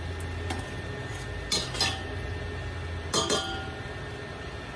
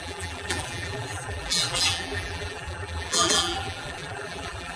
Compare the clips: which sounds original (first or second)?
first